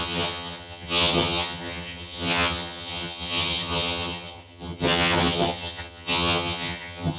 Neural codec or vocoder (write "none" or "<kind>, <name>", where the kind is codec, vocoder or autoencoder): vocoder, HiFi-GAN